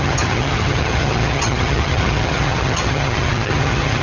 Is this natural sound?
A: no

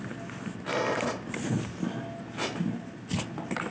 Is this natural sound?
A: yes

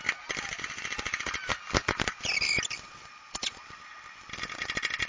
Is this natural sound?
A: yes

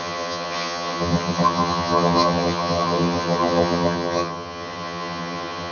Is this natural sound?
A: no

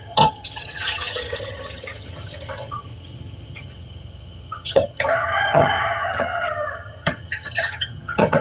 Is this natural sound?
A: no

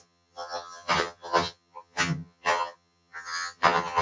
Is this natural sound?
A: no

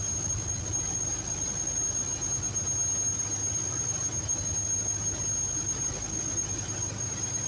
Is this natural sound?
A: yes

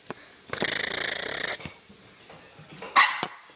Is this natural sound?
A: yes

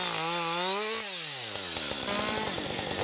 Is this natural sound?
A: yes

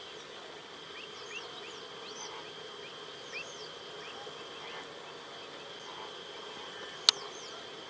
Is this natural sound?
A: yes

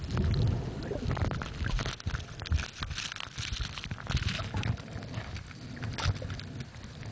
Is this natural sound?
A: yes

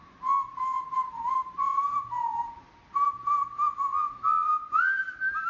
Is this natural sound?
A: yes